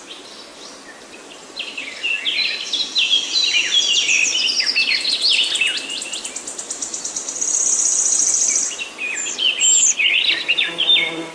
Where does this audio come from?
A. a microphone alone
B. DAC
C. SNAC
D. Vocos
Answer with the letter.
A